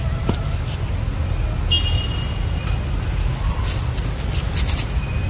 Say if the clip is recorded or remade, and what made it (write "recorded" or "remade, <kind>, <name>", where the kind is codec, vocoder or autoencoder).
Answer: recorded